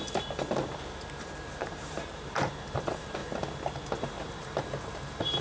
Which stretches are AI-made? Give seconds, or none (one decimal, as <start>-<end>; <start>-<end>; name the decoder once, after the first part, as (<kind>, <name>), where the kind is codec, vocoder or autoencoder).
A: 0.7-3.2 (vocoder, BigVGAN v2); 3.9-5.4